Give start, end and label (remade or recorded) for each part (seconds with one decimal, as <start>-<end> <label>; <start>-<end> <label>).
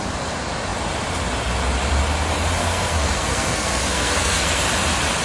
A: 0.0-2.6 recorded; 2.6-4.6 remade; 4.6-5.2 recorded